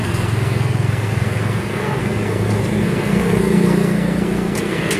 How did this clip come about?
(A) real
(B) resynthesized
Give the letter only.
B